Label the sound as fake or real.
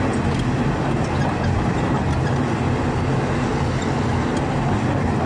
real